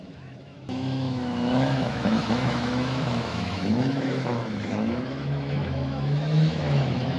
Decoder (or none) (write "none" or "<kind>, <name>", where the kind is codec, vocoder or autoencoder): autoencoder, DAC-VAE